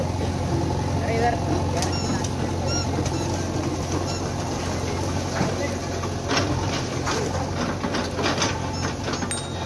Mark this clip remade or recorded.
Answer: recorded